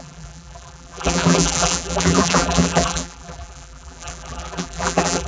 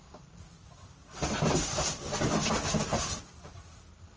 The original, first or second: second